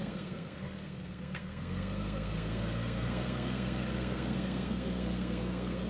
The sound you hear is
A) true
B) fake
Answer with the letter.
B